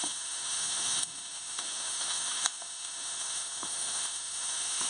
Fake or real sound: fake